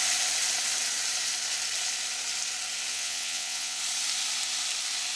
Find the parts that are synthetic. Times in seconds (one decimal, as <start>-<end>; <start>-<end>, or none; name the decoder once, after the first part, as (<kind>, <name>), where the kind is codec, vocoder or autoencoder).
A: 2.9-3.8 (vocoder, WaveNeXt)